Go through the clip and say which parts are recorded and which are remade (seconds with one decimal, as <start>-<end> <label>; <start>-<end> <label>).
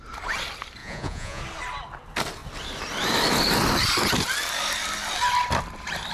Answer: 0.0-0.8 recorded; 0.8-1.4 remade; 1.4-6.1 recorded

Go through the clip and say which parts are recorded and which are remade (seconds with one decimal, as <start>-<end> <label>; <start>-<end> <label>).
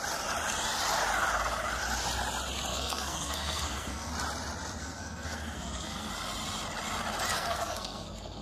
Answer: 0.0-2.7 recorded; 2.7-4.1 remade; 4.1-4.8 recorded; 4.8-6.1 remade; 6.1-7.3 recorded; 7.3-8.4 remade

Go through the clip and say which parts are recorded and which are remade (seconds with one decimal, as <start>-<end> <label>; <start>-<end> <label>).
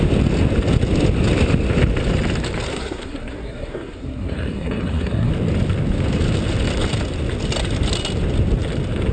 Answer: 0.0-2.7 recorded; 2.7-5.3 remade; 5.3-9.1 recorded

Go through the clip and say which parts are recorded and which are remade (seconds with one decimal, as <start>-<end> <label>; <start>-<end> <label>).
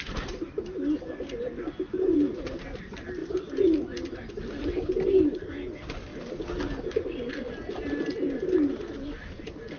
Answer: 0.0-9.8 recorded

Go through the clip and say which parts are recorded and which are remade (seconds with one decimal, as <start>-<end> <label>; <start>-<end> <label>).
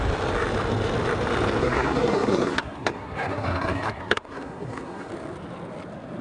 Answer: 0.0-1.6 recorded; 1.6-5.1 remade; 5.1-6.2 recorded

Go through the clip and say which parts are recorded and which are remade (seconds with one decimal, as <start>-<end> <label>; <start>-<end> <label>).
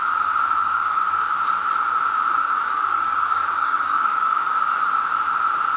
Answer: 0.0-0.6 recorded; 0.6-1.3 remade; 1.3-2.4 recorded; 2.4-4.5 remade; 4.5-5.8 recorded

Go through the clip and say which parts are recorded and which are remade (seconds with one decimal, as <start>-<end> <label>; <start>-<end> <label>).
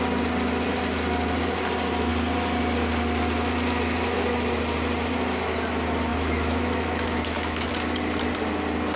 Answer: 0.0-6.1 recorded; 6.1-7.7 remade; 7.7-9.0 recorded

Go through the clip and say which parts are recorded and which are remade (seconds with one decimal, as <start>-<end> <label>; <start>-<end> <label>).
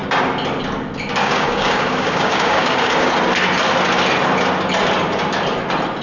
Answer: 0.0-1.2 recorded; 1.2-3.1 remade; 3.1-6.0 recorded